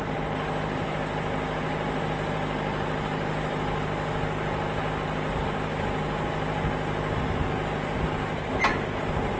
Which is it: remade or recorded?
recorded